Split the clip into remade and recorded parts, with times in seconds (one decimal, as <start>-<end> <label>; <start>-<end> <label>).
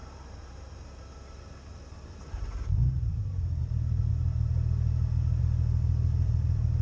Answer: 0.0-6.8 recorded